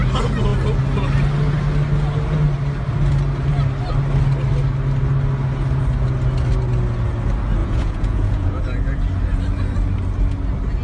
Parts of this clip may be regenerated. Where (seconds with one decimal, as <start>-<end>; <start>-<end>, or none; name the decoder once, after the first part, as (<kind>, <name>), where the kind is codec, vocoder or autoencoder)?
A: 7.6-8.6 (vocoder, Vocos)